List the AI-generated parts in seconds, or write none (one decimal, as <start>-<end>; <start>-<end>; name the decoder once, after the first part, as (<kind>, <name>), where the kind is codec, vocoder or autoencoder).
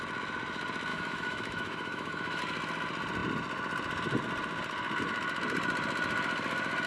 0.9-2.4 (autoencoder, DAC-VAE)